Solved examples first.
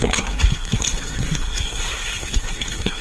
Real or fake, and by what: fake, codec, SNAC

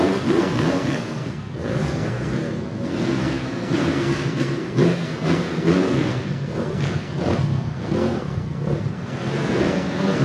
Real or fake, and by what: fake, codec, SNAC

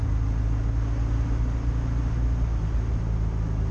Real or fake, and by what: real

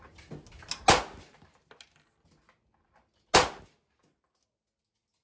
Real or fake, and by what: real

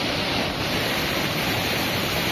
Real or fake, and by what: real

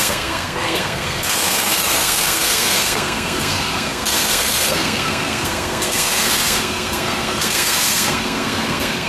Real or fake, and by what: fake, codec, SNAC